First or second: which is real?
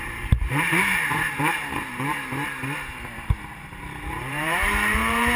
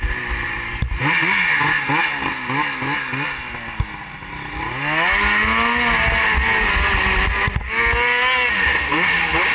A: second